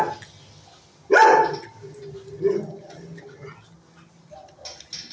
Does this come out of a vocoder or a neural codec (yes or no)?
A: no